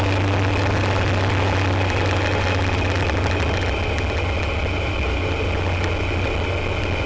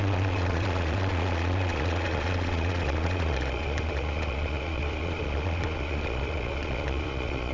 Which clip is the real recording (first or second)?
first